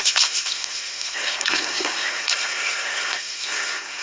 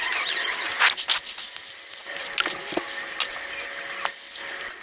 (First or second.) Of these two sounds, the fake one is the first